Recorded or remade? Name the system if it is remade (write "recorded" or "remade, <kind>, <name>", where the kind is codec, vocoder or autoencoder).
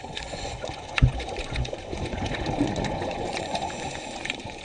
remade, vocoder, Vocos